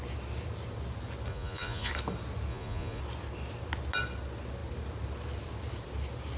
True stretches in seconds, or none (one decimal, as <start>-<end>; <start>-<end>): 0.0-1.3; 1.9-2.5; 3.0-6.4